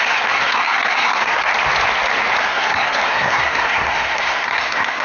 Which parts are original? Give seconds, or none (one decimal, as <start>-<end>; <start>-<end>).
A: 1.5-2.4